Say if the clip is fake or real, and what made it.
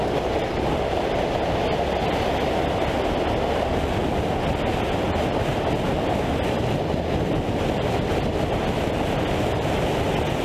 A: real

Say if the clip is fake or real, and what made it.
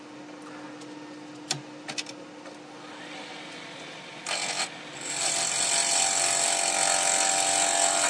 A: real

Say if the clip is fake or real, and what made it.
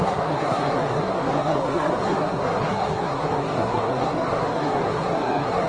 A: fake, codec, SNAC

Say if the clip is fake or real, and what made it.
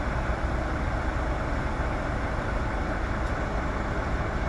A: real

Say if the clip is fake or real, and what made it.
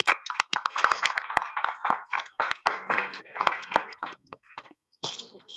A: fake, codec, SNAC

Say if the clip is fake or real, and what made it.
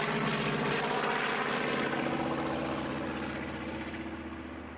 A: real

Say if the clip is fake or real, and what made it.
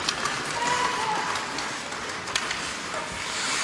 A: real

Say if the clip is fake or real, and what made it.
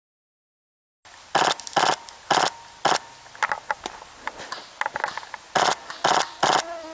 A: real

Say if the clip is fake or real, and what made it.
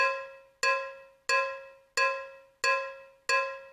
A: real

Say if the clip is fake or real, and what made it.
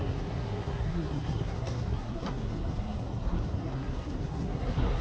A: fake, codec, SNAC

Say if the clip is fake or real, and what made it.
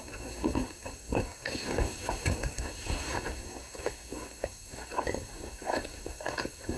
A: fake, codec, SNAC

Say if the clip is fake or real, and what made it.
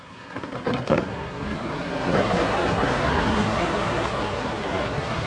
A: fake, codec, SNAC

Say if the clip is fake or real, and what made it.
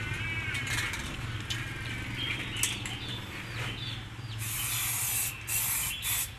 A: real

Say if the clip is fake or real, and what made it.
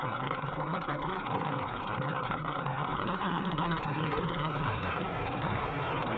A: fake, codec, SNAC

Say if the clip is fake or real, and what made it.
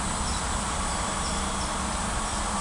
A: real